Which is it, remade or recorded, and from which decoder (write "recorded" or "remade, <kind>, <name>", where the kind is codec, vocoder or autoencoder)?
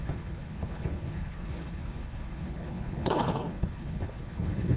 remade, codec, HILCodec